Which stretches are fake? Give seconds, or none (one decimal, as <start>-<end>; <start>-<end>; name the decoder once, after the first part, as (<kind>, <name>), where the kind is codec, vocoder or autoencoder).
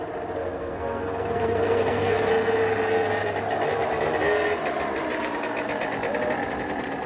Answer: 0.4-2.3 (codec, SNAC)